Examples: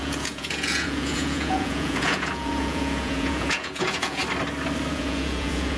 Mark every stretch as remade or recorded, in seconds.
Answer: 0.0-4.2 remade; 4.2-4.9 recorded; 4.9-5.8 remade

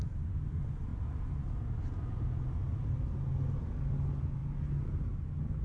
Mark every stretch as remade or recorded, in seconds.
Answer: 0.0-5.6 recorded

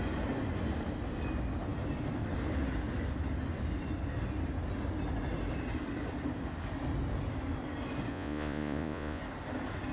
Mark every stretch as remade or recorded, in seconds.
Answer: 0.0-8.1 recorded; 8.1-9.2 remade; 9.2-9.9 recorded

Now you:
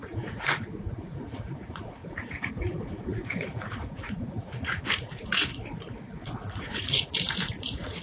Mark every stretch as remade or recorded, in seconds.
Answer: 0.0-5.5 remade; 5.5-6.3 recorded; 6.3-8.0 remade

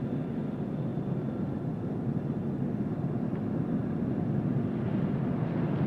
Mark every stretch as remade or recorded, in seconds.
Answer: 0.0-5.9 recorded

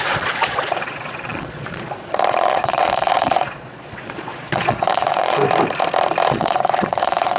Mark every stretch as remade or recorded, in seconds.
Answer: 0.0-5.4 remade; 5.4-6.3 recorded; 6.3-7.4 remade

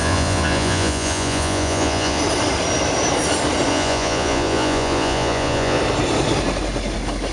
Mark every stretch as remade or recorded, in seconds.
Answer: 0.0-2.2 remade; 2.2-3.7 recorded; 3.7-5.8 remade; 5.8-7.3 recorded

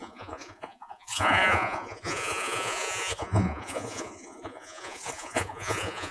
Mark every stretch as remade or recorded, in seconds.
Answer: 0.0-6.1 remade